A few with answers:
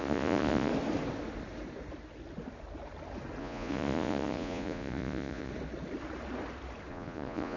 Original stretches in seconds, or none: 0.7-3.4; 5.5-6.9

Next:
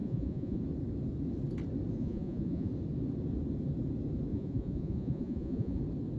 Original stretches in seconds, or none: 0.6-2.0; 2.7-4.3; 5.8-6.2